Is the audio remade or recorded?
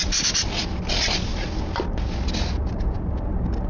recorded